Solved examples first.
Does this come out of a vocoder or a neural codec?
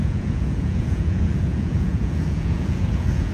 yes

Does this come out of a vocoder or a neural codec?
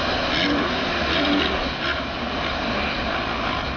no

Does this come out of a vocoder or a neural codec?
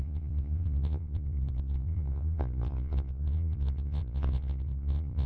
yes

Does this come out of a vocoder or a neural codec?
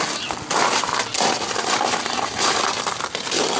no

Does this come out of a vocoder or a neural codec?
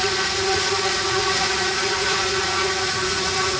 yes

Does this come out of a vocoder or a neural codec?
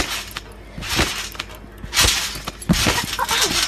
no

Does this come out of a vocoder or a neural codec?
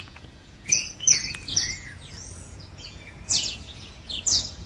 yes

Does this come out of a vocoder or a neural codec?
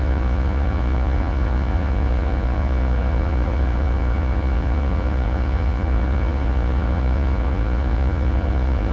yes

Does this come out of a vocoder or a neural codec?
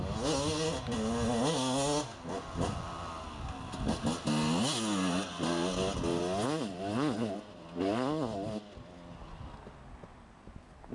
no